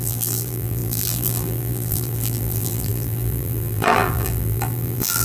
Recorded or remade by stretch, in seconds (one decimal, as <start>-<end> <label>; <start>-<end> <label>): 0.0-5.2 remade